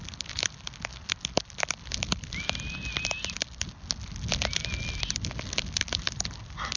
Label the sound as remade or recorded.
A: recorded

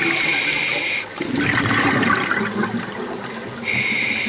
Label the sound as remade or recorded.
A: recorded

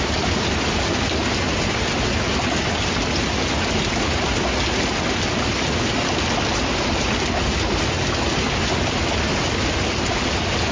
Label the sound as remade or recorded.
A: recorded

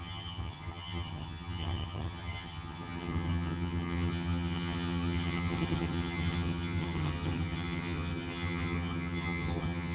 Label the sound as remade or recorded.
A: remade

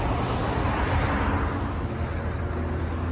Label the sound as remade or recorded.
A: recorded